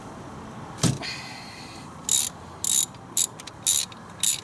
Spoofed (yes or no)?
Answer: no